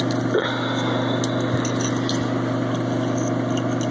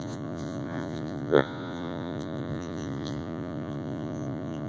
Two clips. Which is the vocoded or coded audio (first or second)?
second